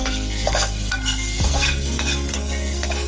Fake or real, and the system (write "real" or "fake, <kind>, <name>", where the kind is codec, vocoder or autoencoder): fake, codec, SNAC